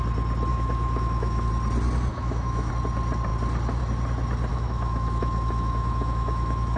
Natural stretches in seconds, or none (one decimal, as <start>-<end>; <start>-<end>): 0.0-0.5; 1.5-2.1; 2.7-4.5